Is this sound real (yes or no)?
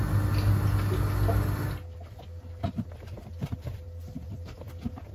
yes